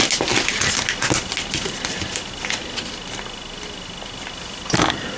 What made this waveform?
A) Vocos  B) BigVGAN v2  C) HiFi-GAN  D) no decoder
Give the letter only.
D